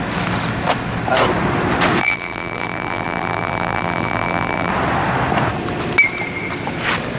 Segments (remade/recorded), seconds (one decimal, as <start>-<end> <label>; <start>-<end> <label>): 0.0-2.0 recorded; 2.0-4.7 remade; 4.7-7.2 recorded